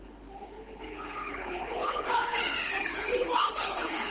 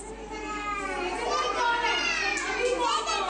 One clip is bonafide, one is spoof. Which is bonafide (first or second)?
second